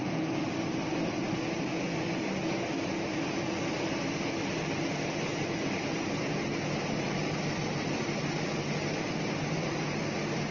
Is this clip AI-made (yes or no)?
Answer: no